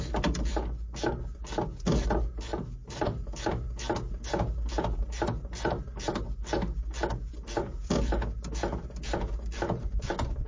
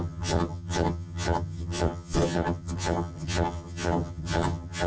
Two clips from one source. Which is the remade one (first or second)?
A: second